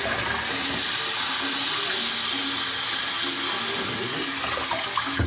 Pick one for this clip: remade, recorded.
recorded